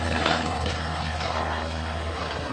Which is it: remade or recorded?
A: remade